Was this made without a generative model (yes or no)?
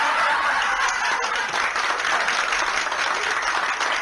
yes